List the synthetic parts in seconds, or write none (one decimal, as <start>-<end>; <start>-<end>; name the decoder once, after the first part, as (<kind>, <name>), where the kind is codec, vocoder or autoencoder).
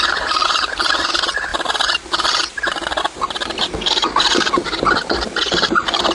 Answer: 0.0-4.5 (vocoder, BigVGAN v2); 5.4-6.1